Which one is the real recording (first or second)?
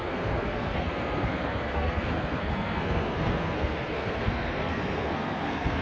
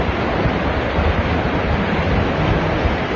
second